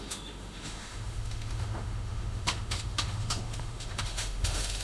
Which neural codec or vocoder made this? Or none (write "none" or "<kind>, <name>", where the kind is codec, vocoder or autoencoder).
autoencoder, DAC-VAE